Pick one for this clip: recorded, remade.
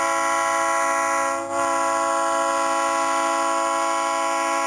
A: recorded